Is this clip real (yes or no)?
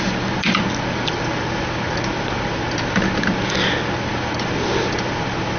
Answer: yes